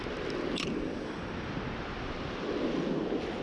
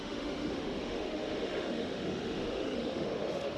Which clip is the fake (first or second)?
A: second